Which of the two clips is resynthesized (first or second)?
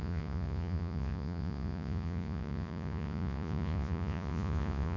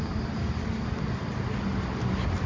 first